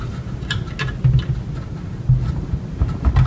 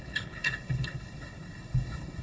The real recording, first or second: first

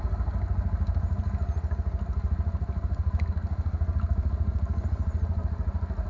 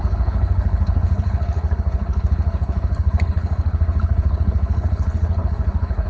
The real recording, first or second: first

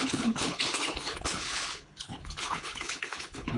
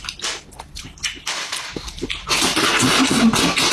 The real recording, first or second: second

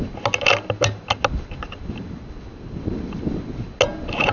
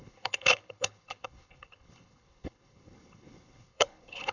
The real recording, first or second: first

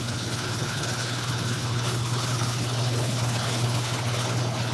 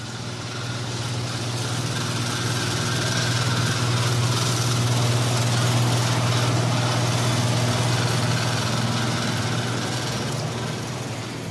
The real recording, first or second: second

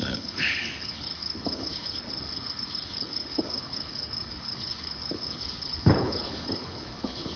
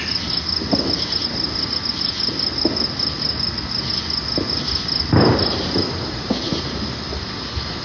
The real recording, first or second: second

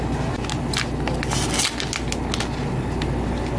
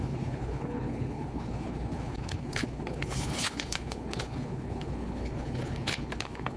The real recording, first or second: first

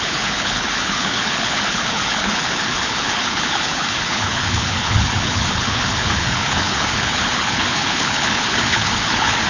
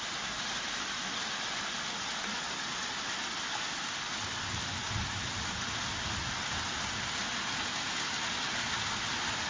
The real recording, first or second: second